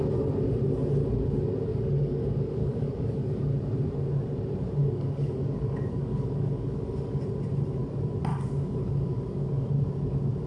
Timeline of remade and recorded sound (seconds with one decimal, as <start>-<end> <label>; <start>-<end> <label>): 0.0-1.7 recorded; 1.7-3.4 remade; 3.4-4.8 recorded; 4.8-7.2 remade; 7.2-8.3 recorded; 8.3-9.7 remade; 9.7-10.5 recorded